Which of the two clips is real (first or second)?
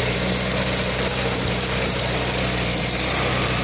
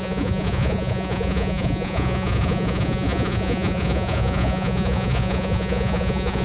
first